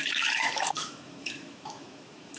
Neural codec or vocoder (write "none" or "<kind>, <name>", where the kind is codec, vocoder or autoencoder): autoencoder, DAC-VAE